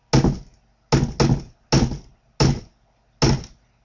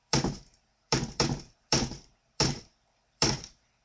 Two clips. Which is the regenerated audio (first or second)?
second